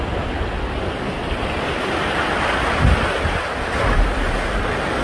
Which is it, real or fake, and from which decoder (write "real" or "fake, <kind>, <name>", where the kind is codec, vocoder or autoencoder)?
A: real